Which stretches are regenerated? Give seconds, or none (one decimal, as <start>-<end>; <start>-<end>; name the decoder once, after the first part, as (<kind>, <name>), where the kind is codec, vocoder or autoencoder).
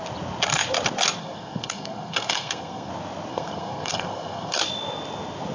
1.2-2.9 (codec, SNAC); 3.3-4.6